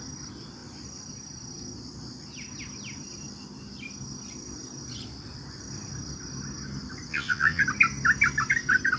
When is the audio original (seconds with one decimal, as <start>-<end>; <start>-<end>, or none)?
0.0-7.1; 7.6-9.0